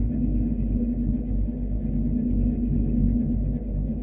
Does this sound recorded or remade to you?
recorded